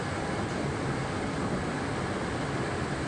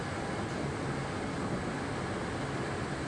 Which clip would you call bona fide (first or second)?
second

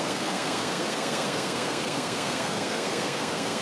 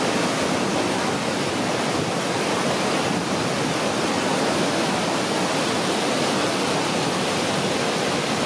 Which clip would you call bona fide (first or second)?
second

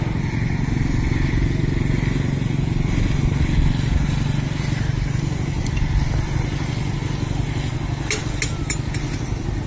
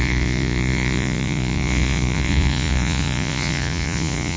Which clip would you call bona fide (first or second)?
first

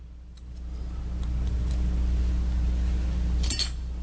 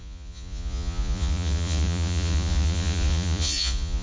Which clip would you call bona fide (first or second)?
first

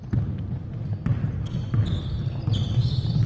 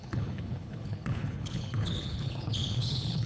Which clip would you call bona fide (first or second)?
first